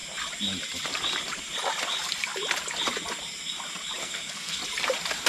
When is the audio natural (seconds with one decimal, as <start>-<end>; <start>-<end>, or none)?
0.0-4.0; 4.6-5.3